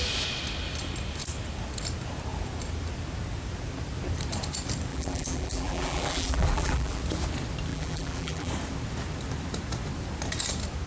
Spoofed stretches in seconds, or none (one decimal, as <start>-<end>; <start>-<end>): 4.9-7.0; 7.7-8.5